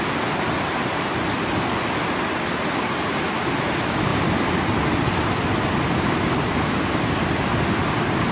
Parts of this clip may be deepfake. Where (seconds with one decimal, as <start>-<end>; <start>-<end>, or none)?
none